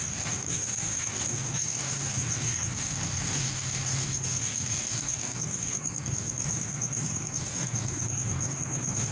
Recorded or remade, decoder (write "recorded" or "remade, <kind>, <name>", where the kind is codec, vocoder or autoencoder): remade, codec, DAC